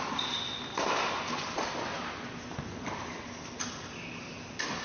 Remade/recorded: recorded